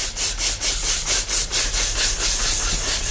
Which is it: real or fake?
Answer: real